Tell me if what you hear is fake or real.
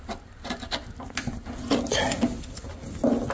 real